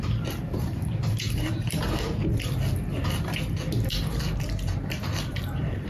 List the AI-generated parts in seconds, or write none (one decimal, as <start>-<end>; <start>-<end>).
0.0-2.2; 3.9-5.9